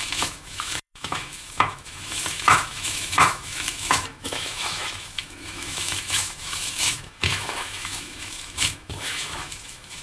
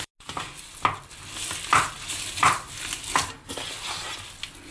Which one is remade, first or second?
first